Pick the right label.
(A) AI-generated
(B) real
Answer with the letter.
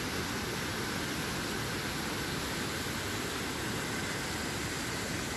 B